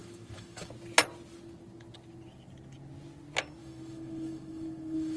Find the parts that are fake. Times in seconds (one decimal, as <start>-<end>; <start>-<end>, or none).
0.0-0.7; 3.6-5.2